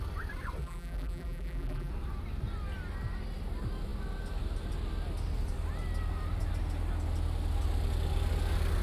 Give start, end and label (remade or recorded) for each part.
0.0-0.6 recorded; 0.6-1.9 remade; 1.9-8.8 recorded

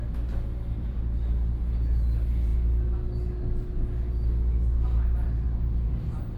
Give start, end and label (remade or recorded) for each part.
0.0-6.4 recorded

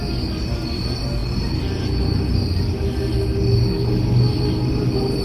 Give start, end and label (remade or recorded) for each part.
0.0-5.2 recorded